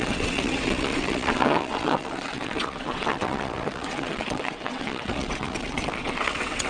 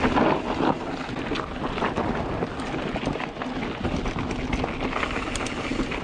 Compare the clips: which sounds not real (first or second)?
first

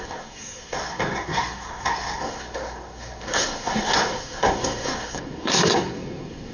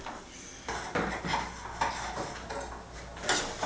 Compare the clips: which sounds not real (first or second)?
first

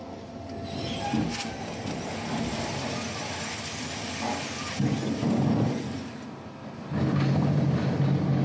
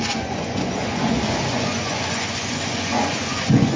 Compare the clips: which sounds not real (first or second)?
second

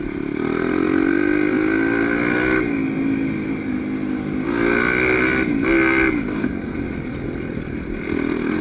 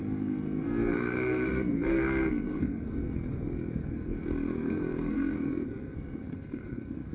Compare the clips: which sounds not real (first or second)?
second